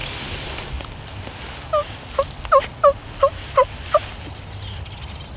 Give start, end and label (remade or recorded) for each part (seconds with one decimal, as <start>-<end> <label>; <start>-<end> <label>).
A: 0.0-5.4 recorded